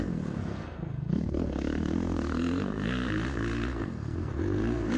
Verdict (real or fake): fake